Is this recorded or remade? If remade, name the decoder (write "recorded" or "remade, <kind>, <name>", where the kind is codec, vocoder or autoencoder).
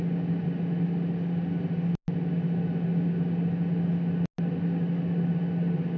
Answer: recorded